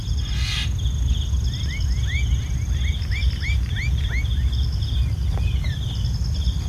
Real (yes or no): yes